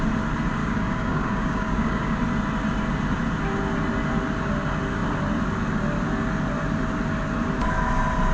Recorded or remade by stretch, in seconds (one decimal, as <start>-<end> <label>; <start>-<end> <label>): 0.0-0.6 recorded; 0.6-2.2 remade; 2.2-8.3 recorded